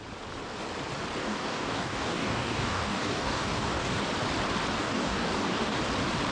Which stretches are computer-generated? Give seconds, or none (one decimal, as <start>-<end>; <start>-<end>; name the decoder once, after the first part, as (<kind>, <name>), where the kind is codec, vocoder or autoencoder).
1.2-4.0 (codec, DAC); 4.8-5.8